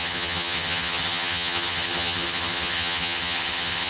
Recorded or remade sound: remade